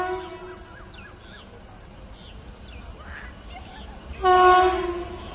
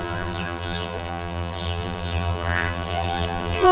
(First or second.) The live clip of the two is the first